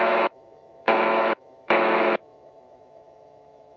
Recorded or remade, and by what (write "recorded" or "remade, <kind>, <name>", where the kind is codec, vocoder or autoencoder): remade, autoencoder, DAC-VAE